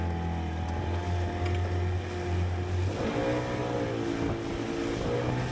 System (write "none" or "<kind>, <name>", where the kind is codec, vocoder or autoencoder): none